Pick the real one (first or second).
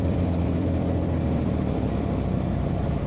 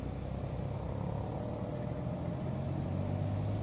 second